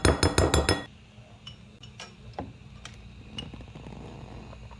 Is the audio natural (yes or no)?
yes